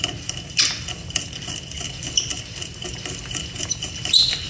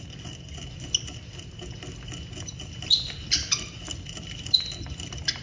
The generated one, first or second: first